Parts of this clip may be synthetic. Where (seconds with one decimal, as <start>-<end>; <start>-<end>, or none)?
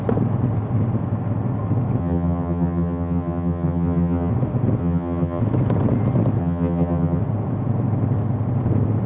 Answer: 2.0-4.3; 4.8-5.4; 6.4-7.2